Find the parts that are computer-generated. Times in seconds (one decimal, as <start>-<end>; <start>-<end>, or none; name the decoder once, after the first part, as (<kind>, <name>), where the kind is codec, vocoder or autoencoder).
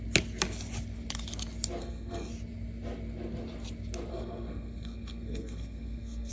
1.8-2.3 (codec, SNAC); 4.1-6.3